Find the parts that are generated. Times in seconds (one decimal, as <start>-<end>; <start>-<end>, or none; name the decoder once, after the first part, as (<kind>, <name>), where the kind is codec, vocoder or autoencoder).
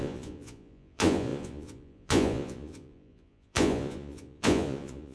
0.0-5.1 (vocoder, Vocos)